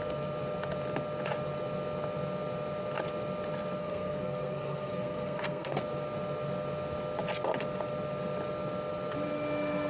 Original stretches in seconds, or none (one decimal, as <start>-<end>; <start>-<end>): 0.0-3.8; 5.8-9.9